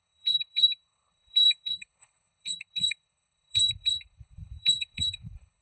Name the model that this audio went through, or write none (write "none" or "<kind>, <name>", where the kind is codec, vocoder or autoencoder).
codec, HILCodec